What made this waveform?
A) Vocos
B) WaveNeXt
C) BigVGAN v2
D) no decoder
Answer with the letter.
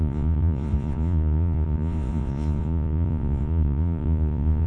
A